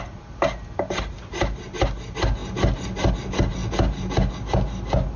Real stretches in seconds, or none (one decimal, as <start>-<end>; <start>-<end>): 0.0-5.2